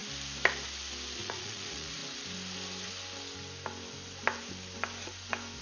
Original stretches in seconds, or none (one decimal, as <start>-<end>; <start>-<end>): 0.0-1.2; 2.0-5.6